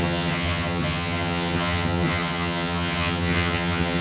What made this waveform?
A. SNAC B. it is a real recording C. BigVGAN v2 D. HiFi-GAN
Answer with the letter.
D